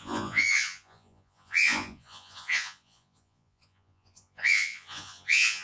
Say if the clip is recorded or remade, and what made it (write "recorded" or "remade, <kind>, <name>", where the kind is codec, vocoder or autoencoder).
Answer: remade, vocoder, Vocos